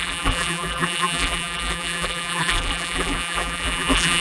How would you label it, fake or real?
fake